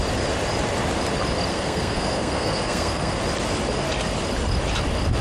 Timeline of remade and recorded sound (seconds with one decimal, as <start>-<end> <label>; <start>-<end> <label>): 0.0-1.5 recorded; 1.5-3.2 remade; 3.2-5.2 recorded